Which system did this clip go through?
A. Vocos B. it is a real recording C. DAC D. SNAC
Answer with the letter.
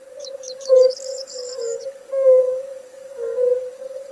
C